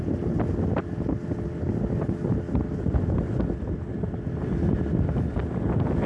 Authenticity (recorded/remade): recorded